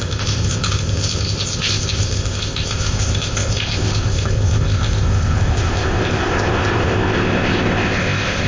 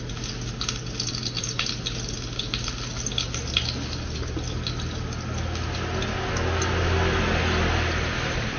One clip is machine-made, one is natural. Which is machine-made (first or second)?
first